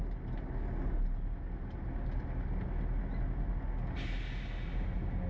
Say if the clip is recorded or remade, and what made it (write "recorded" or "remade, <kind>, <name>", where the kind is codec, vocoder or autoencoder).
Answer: recorded